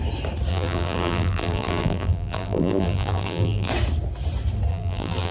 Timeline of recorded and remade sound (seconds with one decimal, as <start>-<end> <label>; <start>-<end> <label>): 0.0-0.5 recorded; 0.5-3.7 remade; 3.7-4.7 recorded; 4.7-5.3 remade